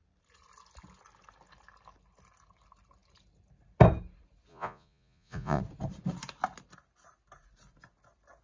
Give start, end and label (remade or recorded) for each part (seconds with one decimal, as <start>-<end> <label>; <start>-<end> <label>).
0.0-4.5 recorded; 4.5-5.6 remade; 5.6-8.4 recorded